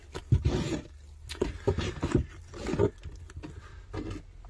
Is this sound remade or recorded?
recorded